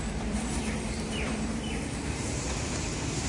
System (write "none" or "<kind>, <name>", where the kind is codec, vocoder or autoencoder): vocoder, BigVGAN v2